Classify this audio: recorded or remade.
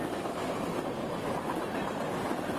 recorded